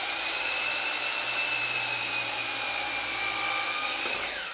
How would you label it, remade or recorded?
recorded